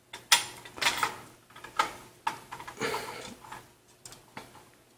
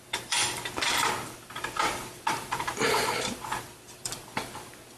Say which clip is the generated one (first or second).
second